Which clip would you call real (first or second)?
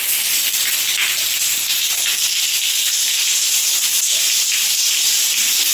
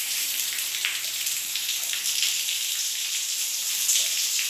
first